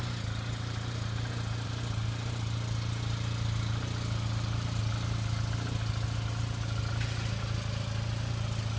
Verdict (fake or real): real